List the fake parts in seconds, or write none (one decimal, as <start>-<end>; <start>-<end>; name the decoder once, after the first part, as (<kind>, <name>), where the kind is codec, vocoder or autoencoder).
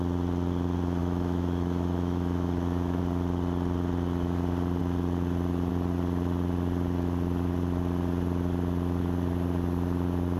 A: 1.0-3.0 (autoencoder, DAC-VAE)